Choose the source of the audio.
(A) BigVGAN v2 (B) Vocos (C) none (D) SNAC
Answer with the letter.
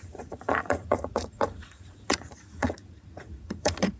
B